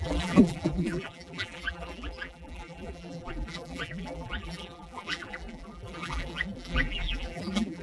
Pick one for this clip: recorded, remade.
remade